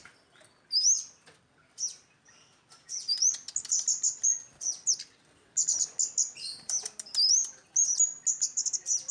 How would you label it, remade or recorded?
recorded